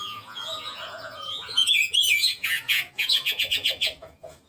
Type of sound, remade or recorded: remade